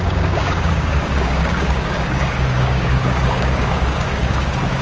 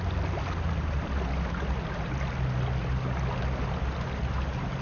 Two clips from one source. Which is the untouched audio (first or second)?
second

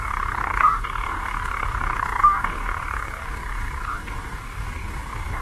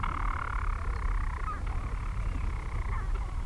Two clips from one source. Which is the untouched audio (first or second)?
second